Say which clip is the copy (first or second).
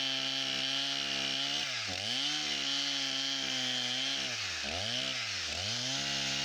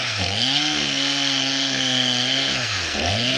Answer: second